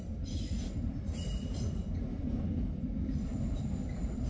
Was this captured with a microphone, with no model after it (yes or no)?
yes